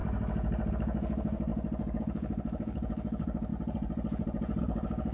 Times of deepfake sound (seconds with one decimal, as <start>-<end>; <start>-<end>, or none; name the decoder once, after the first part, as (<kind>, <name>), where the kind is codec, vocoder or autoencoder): 0.7-1.5 (codec, DAC); 2.0-3.5; 4.6-5.1